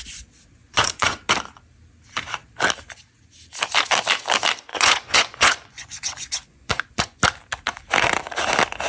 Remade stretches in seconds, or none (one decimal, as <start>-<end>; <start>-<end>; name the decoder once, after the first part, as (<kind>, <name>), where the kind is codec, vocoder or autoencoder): 0.6-1.3 (vocoder, Vocos); 4.7-7.2